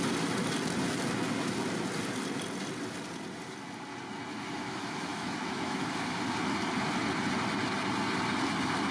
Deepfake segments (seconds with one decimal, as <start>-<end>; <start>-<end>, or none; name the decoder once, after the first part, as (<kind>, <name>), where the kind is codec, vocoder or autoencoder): 4.3-6.2 (autoencoder, DAC-VAE)